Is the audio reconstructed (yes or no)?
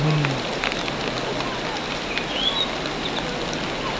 no